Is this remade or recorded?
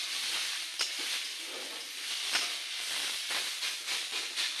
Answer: remade